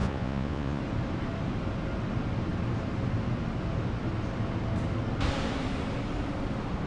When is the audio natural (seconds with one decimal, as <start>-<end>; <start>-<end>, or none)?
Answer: 0.8-6.9